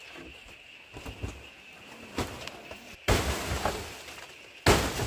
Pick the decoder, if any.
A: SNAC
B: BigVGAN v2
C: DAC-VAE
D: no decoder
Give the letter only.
D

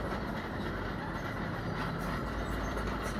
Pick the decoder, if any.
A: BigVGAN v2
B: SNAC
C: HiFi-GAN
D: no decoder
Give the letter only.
D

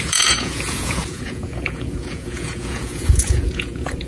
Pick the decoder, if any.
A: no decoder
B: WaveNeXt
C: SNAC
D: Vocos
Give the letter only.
D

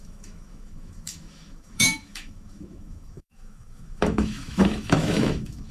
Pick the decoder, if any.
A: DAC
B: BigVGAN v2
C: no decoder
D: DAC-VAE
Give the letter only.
D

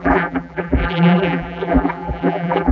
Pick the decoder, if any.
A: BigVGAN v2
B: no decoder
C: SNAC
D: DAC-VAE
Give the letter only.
A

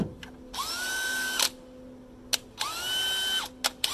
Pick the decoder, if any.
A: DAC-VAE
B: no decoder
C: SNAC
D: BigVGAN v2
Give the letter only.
B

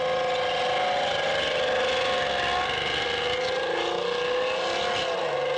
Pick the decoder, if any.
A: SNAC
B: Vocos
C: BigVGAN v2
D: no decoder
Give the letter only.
D